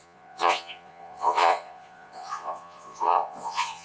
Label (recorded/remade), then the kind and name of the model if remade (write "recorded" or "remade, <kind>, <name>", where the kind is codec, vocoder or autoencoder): remade, vocoder, Vocos